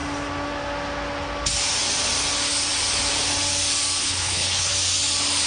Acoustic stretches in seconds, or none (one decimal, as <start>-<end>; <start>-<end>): 0.0-4.0; 4.7-5.5